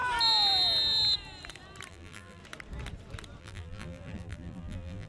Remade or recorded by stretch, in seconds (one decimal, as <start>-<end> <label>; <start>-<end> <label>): 0.0-1.9 recorded; 1.9-2.4 remade; 2.4-3.4 recorded; 3.4-5.1 remade